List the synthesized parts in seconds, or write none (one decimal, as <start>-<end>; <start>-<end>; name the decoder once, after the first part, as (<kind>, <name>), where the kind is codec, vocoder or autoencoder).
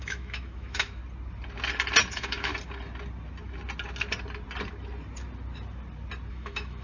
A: 0.0-1.0 (autoencoder, DAC-VAE); 2.1-2.5; 6.3-6.8